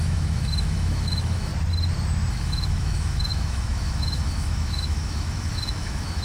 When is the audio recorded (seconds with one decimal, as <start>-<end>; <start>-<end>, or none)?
1.5-2.3